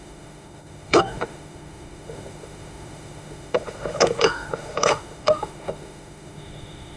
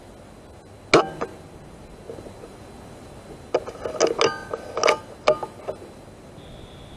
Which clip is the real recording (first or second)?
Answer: second